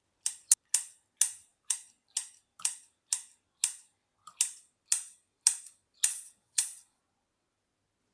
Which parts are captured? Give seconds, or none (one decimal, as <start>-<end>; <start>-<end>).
0.0-6.1; 7.0-8.1

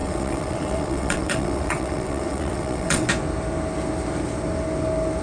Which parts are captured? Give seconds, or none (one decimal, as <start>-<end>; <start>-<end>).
3.1-5.2